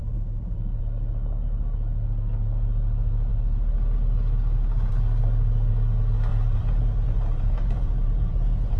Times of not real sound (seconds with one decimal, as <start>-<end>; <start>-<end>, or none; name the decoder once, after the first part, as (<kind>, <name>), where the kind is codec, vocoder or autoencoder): 0.0-0.8 (vocoder, BigVGAN v2); 6.3-8.8

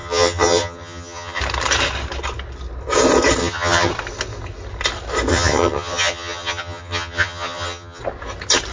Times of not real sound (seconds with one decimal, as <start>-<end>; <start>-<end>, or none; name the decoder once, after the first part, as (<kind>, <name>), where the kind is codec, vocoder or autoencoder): 0.0-1.4 (vocoder, HiFi-GAN); 3.4-3.9; 5.3-8.0

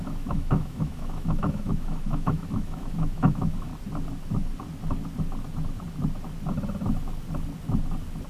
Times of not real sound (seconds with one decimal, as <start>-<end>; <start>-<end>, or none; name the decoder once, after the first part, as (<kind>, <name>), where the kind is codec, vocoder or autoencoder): 0.0-3.7 (autoencoder, DAC-VAE)

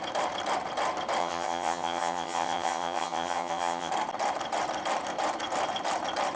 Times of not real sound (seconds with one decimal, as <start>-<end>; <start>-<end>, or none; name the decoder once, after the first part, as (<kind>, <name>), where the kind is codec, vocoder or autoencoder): 1.2-3.9 (vocoder, HiFi-GAN)

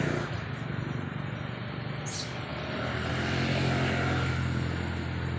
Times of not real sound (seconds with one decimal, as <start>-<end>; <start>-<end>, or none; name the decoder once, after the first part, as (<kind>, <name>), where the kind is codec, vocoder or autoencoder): none

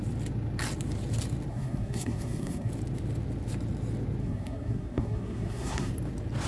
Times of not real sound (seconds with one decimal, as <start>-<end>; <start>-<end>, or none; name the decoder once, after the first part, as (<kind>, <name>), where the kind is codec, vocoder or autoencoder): 1.5-2.7 (codec, SNAC); 4.2-5.9

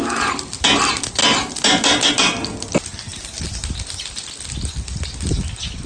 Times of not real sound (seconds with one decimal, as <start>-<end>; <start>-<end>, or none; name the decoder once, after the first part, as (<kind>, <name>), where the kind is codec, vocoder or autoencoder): none

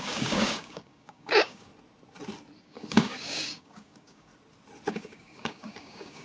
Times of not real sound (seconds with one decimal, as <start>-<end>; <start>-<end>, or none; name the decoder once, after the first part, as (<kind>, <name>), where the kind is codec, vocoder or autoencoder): 0.0-1.7 (codec, DAC); 2.6-4.3; 4.9-6.2